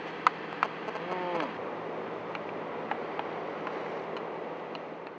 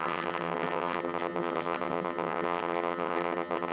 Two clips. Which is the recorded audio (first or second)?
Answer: first